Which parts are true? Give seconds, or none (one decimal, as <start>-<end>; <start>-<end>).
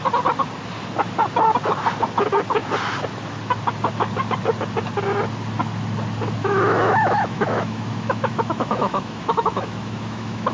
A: 0.0-6.4